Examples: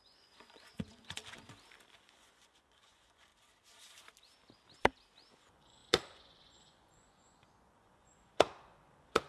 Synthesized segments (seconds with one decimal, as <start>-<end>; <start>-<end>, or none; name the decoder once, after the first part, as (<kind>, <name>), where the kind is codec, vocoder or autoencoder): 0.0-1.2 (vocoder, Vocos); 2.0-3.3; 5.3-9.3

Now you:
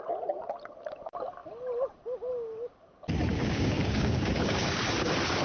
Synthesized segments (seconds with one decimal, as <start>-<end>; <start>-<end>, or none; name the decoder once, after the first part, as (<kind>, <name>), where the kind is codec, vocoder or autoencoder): 3.3-4.8 (codec, DAC)

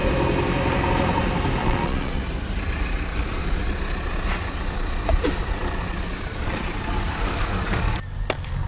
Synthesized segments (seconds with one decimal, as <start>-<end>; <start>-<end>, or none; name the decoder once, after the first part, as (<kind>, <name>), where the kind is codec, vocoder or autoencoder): 1.6-2.2 (vocoder, Vocos); 3.1-6.9

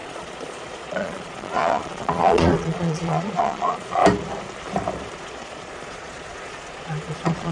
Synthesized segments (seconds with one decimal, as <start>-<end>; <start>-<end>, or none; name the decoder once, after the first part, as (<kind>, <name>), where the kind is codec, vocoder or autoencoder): 0.0-4.0 (vocoder, Vocos); 5.1-7.5